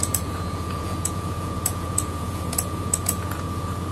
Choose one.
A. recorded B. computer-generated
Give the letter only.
B